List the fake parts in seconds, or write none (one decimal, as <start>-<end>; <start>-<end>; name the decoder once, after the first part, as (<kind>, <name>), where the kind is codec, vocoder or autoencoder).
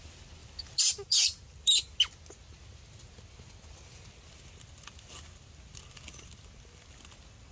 none